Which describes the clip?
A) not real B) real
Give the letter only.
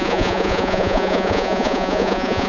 A